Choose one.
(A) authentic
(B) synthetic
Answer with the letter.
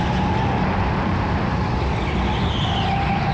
A